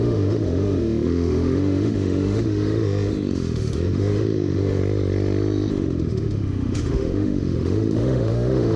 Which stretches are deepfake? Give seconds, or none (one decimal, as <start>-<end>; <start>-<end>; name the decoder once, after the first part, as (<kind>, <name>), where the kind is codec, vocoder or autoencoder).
0.0-4.8 (autoencoder, DAC-VAE); 5.7-8.8